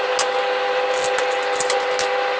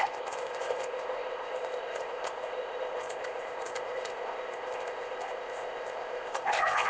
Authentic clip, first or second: first